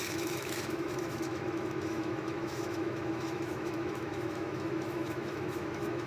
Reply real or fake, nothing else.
fake